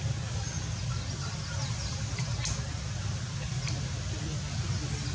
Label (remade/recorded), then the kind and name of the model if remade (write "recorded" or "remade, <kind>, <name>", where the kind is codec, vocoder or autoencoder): recorded